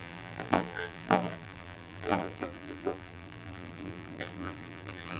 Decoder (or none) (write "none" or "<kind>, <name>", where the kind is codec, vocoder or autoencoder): vocoder, BigVGAN v2